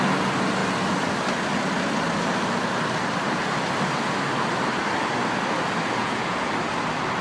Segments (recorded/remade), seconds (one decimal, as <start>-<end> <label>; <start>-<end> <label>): 0.0-6.0 recorded; 6.0-6.5 remade; 6.5-7.2 recorded